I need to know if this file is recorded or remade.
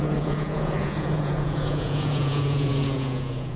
remade